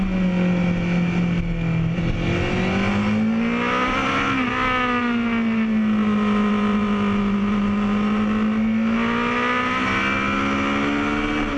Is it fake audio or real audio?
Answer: real